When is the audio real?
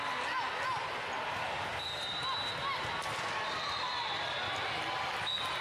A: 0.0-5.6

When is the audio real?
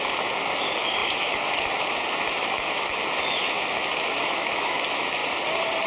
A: 5.2-5.9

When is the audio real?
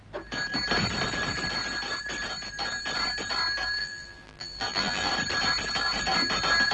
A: 0.0-3.8; 5.1-6.7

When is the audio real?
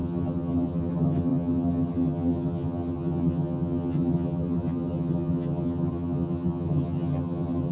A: none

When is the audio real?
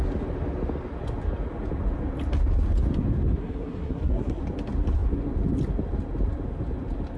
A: 0.0-3.4; 4.4-7.2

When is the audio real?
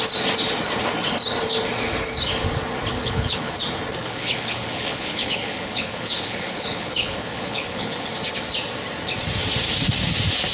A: 0.0-2.9; 3.5-4.0; 8.1-10.5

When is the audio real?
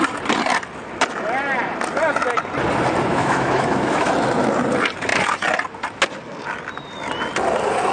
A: 0.0-3.1; 4.1-7.9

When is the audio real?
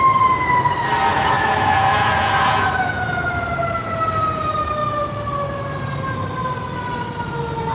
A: 0.0-1.1; 3.3-7.7